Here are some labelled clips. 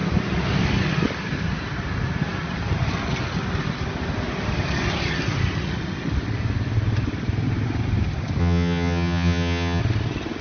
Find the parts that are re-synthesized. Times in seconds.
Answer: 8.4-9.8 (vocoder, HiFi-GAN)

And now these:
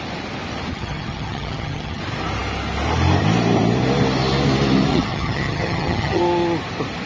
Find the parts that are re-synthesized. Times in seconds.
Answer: 0.7-2.0 (vocoder, HiFi-GAN); 4.9-6.2

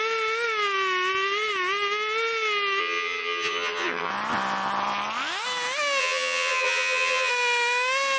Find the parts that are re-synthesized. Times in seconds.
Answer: 2.8-4.1 (vocoder, HiFi-GAN); 6.0-7.3

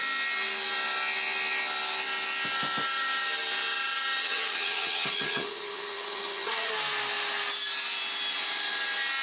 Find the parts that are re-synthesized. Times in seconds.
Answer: 4.2-6.7 (vocoder, HiFi-GAN)

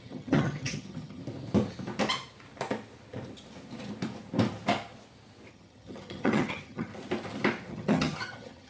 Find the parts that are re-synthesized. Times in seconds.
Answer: 0.0-1.2 (vocoder, HiFi-GAN); 5.5-6.9; 7.7-8.7